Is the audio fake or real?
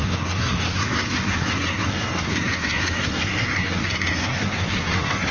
fake